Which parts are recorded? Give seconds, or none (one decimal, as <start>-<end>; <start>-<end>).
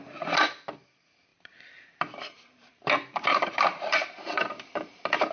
0.0-1.3; 4.5-5.3